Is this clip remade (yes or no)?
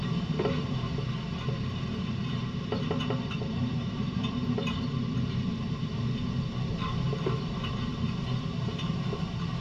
yes